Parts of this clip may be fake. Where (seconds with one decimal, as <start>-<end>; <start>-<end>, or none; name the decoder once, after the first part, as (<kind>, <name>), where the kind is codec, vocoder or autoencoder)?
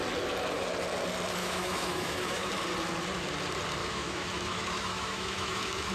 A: 1.4-2.5 (autoencoder, DAC-VAE); 3.8-5.9